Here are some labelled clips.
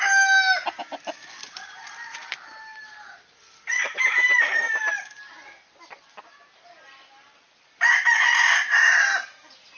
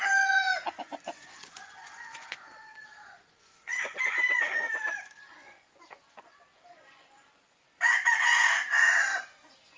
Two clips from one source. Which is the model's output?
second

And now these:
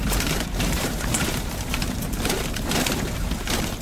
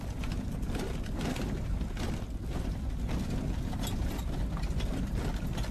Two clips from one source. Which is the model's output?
first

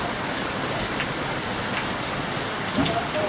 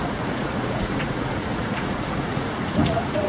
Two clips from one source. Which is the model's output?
second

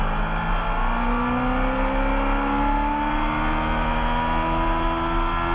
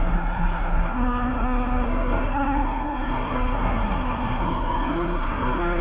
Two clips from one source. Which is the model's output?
second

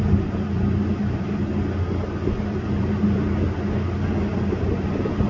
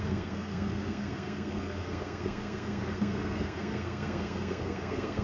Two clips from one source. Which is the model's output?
second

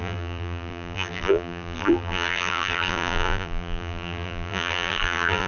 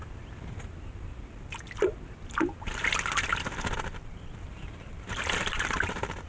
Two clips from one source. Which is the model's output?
first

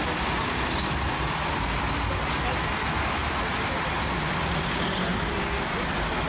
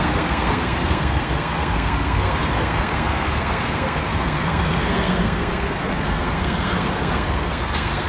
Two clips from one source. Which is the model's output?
second